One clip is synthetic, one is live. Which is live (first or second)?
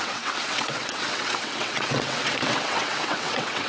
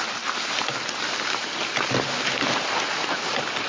second